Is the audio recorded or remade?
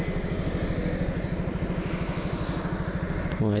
recorded